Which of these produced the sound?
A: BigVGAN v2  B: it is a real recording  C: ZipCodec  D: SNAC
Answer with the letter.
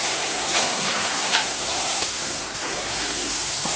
D